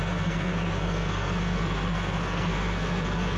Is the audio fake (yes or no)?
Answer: yes